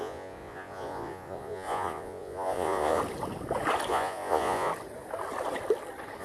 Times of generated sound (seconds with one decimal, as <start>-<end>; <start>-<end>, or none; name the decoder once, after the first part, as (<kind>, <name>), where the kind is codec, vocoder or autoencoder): 0.0-3.0 (vocoder, Vocos); 3.9-4.7